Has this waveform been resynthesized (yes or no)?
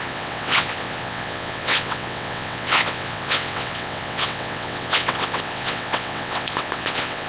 yes